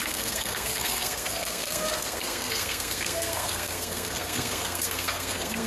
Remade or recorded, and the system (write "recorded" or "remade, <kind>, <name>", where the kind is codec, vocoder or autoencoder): remade, codec, SNAC